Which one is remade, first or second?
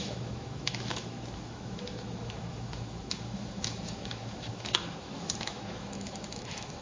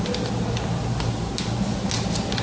first